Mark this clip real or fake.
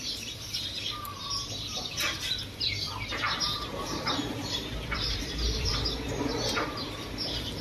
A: fake